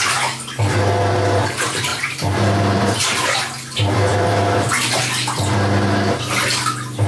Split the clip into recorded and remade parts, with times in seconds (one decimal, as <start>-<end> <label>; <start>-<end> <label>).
0.0-1.9 recorded; 1.9-2.8 remade; 2.8-4.1 recorded; 4.1-5.0 remade; 5.0-7.1 recorded